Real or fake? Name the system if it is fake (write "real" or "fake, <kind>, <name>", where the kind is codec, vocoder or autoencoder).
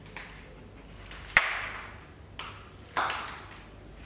real